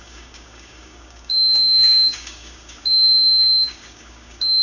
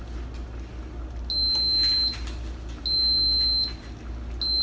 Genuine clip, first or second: second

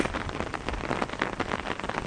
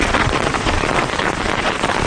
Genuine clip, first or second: first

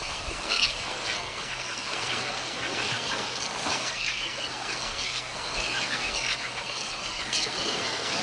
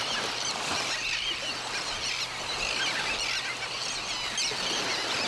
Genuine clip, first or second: second